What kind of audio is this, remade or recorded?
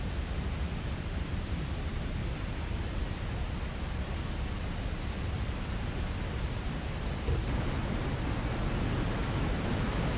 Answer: recorded